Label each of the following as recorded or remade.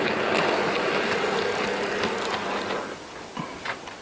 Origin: recorded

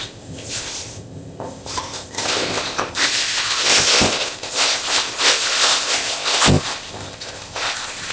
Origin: remade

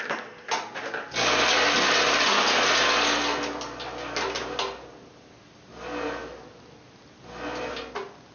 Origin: recorded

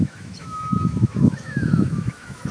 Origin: remade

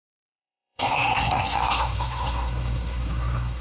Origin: remade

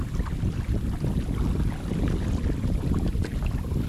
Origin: recorded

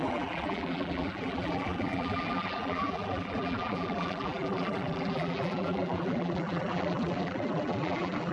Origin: remade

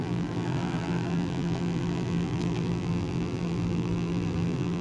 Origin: remade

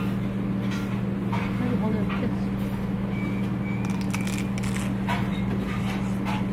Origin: recorded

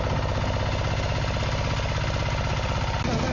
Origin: recorded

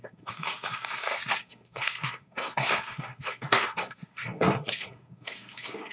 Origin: remade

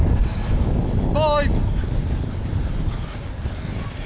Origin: recorded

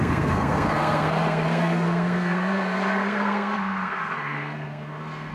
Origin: remade